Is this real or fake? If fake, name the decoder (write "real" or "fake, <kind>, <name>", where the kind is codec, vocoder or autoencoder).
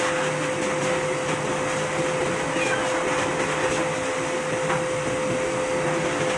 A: real